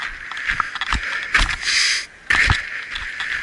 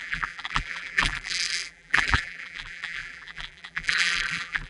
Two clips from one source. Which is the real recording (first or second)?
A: first